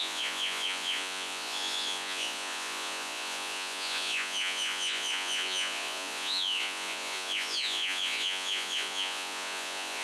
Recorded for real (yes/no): no